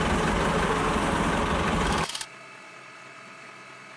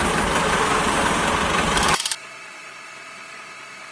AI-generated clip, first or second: second